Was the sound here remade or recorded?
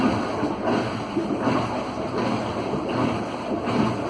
recorded